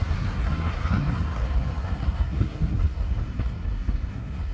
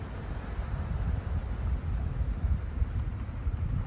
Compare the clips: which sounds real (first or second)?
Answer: second